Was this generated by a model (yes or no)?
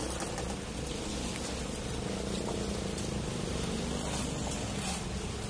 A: no